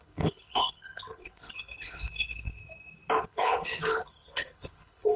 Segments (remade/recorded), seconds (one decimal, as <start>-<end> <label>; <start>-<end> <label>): 0.0-2.6 remade; 2.6-3.2 recorded; 3.2-5.2 remade